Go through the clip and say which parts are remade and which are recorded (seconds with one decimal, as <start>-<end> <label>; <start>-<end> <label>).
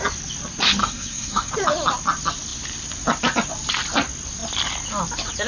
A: 0.0-0.8 recorded; 0.8-1.5 remade; 1.5-5.5 recorded